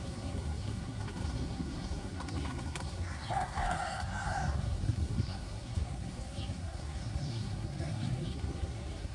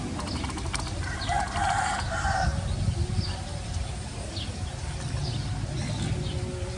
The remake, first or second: first